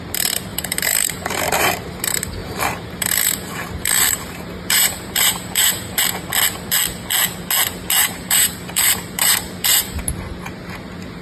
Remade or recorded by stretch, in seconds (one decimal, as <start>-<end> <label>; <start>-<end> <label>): 0.0-0.5 recorded; 0.5-2.0 remade; 2.0-2.4 recorded; 2.4-6.0 remade; 6.0-8.0 recorded; 8.0-10.0 remade; 10.0-11.2 recorded